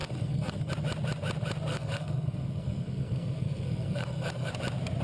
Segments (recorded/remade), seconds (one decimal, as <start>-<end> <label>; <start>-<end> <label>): 0.0-0.7 remade; 0.7-1.7 recorded; 1.7-4.5 remade; 4.5-5.0 recorded